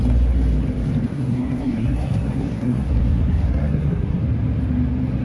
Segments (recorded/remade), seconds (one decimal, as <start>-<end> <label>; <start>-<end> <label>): 0.0-1.1 recorded; 1.1-4.2 remade; 4.2-5.2 recorded

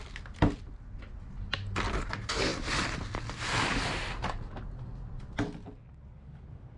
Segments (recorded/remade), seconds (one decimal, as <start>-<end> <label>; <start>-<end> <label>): 0.0-6.8 recorded

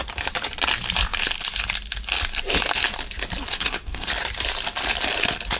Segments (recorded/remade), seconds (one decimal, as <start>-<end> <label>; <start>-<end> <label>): 0.0-3.5 recorded; 3.5-4.1 remade; 4.1-5.6 recorded

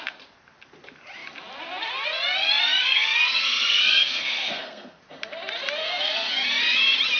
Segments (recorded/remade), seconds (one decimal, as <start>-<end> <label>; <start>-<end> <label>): 0.0-2.8 recorded; 2.8-5.0 remade; 5.0-5.8 recorded; 5.8-6.3 remade; 6.3-7.2 recorded

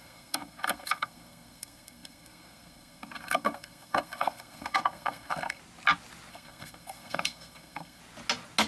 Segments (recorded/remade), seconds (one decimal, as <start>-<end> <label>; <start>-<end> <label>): 0.0-5.6 remade; 5.6-6.3 recorded; 6.3-8.0 remade; 8.0-8.7 recorded

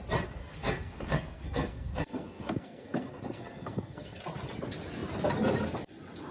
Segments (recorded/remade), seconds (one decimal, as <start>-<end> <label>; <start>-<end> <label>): 0.0-0.4 recorded; 0.4-4.2 remade; 4.2-6.3 recorded